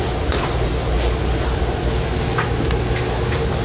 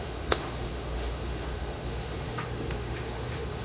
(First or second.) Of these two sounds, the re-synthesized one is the second